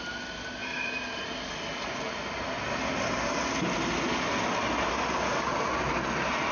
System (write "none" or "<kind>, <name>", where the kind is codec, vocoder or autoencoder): none